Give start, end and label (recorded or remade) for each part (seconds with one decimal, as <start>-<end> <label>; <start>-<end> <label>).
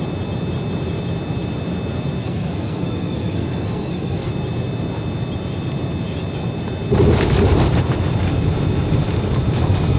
0.0-2.2 recorded; 2.2-4.3 remade; 4.3-10.0 recorded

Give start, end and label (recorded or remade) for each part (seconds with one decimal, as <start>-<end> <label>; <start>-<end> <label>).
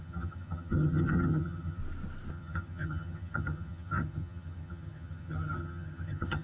0.0-1.8 remade; 1.8-2.3 recorded; 2.3-6.4 remade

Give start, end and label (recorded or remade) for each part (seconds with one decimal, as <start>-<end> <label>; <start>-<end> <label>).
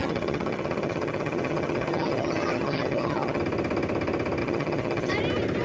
0.0-3.4 remade; 3.4-4.4 recorded; 4.4-5.1 remade; 5.1-5.6 recorded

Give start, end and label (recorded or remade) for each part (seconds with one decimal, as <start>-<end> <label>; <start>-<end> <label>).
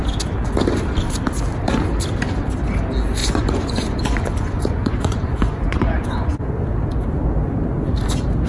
0.0-3.2 recorded; 3.2-6.3 remade; 6.3-8.5 recorded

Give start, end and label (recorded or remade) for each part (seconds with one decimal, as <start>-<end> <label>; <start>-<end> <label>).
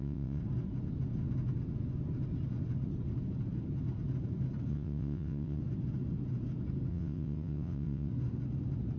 0.0-0.4 remade; 0.4-4.7 recorded; 4.7-5.6 remade; 5.6-6.9 recorded; 6.9-8.1 remade; 8.1-9.0 recorded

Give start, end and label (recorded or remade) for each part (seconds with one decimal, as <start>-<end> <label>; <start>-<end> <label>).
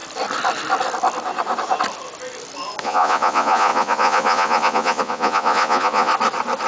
0.0-2.8 recorded; 2.8-6.1 remade; 6.1-6.7 recorded